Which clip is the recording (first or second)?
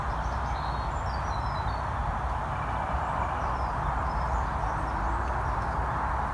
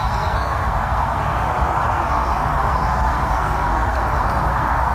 first